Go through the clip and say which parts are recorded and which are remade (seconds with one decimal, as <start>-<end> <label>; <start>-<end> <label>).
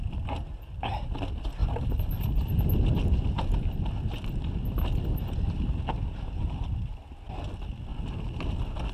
0.0-1.6 recorded; 1.6-2.2 remade; 2.2-8.9 recorded